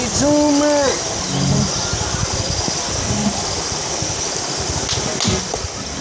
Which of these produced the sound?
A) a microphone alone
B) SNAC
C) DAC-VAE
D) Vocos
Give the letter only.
A